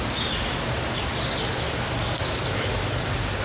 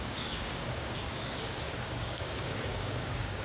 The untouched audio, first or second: first